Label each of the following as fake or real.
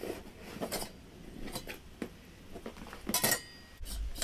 real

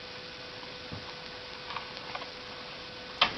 real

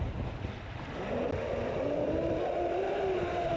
fake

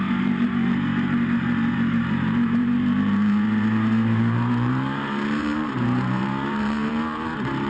fake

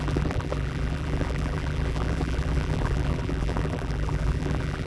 fake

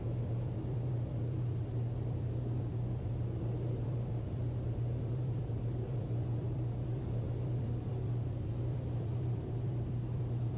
fake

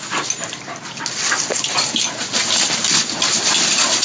real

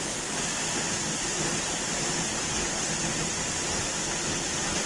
real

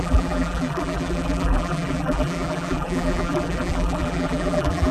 fake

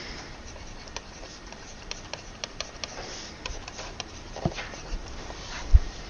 fake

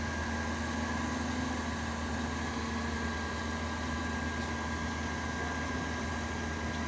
real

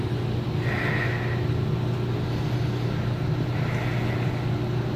real